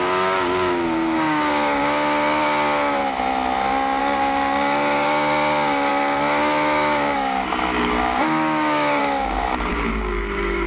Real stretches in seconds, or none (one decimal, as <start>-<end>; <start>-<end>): 3.0-4.0

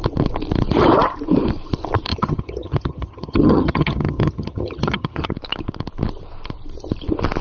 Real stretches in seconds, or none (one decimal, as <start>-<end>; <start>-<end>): 0.0-2.1; 5.3-7.4

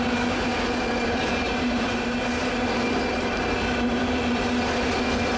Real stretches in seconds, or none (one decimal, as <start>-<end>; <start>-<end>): 0.0-5.4

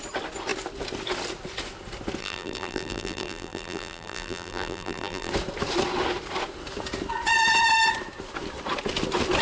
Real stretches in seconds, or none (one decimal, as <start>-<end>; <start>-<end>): 0.0-2.2; 5.3-9.4

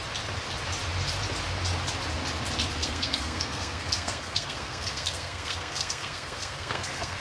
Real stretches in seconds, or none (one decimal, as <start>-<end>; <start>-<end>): 0.0-2.8

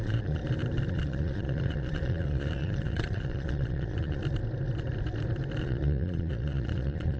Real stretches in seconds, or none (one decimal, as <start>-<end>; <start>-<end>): 0.4-0.9; 4.2-5.6